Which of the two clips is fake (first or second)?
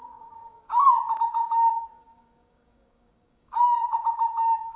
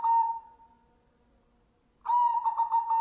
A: first